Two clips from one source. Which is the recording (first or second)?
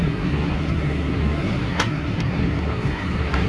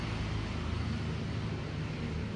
second